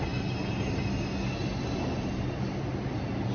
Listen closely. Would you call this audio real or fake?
real